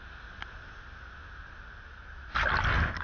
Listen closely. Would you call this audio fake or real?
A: real